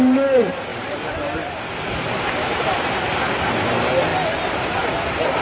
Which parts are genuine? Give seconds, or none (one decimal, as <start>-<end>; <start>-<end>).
0.0-0.7; 2.6-5.4